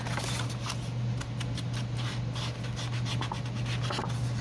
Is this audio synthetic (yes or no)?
no